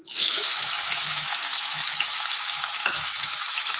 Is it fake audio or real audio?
fake